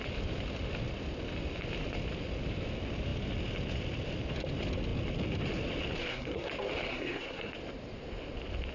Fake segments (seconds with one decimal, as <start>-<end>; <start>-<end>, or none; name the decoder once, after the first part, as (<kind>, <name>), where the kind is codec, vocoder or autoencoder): 6.0-6.5 (codec, SNAC); 6.9-7.5